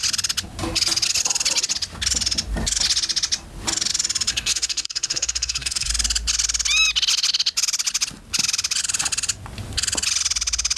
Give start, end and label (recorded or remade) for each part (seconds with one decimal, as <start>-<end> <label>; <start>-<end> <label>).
0.0-4.3 recorded; 4.3-5.9 remade; 5.9-10.8 recorded

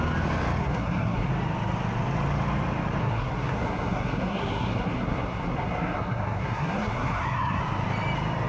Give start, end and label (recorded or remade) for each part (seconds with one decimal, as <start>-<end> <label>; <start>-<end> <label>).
0.0-0.6 recorded; 0.6-1.3 remade; 1.3-3.0 recorded; 3.0-7.6 remade; 7.6-8.5 recorded